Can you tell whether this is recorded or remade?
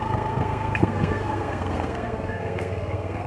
remade